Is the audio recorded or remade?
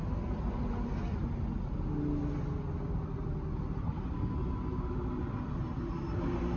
recorded